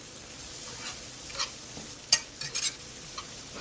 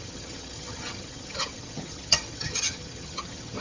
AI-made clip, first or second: second